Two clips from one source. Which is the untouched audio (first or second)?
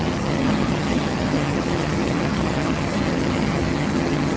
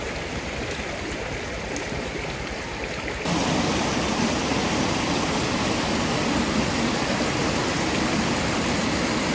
second